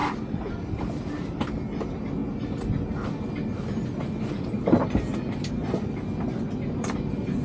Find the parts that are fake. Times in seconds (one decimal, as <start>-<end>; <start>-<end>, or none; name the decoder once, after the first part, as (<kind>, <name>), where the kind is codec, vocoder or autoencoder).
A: none